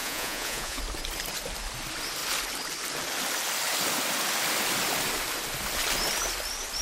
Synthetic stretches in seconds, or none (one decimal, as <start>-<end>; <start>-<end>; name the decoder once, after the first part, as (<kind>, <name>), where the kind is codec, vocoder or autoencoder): 0.0-0.8 (vocoder, Vocos)